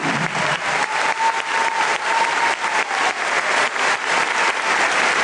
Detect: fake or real real